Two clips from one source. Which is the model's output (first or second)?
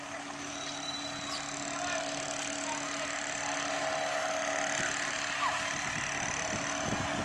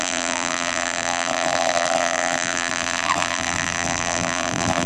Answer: second